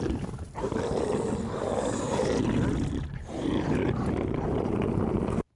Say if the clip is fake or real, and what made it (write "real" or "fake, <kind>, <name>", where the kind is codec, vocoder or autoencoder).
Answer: real